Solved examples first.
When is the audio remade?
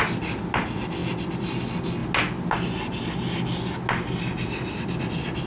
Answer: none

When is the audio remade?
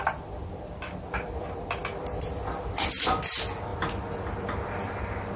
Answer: none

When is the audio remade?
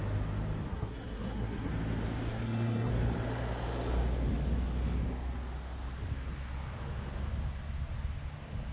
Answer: 0.7-1.7; 2.3-2.9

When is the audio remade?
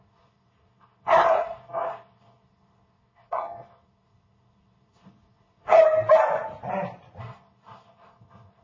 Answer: 0.0-5.8; 7.2-8.6